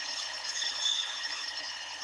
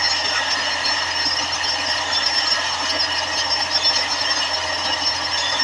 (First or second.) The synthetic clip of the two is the first